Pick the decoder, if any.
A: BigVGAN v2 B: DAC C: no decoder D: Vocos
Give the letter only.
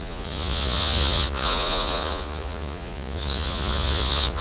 D